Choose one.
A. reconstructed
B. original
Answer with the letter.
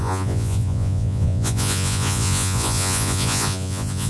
A